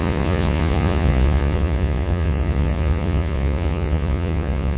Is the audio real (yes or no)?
no